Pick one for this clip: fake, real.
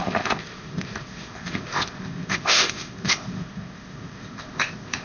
fake